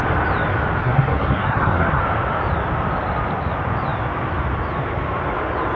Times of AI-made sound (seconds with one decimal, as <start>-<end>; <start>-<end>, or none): 0.8-2.0